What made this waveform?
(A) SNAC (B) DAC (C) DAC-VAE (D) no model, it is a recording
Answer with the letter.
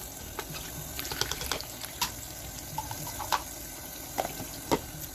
D